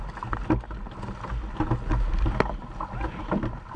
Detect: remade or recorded recorded